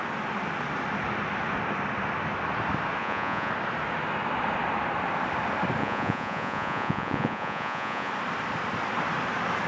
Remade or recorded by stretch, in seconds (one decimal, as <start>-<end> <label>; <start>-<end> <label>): 0.0-3.0 recorded; 3.0-3.5 remade; 3.5-5.8 recorded; 5.8-8.1 remade; 8.1-9.7 recorded